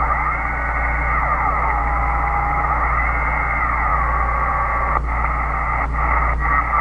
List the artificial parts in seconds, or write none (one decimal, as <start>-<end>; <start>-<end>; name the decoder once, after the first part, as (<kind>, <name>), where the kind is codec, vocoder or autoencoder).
1.8-2.7 (autoencoder, DAC-VAE)